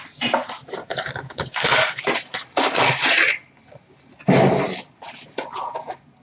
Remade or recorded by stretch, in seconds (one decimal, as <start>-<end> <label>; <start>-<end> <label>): 0.0-0.8 recorded; 0.8-2.0 remade; 2.0-6.2 recorded